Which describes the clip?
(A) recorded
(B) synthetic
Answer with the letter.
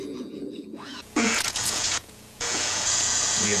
B